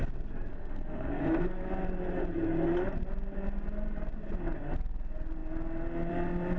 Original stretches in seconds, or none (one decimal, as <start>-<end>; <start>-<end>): 0.0-0.5; 1.7-6.6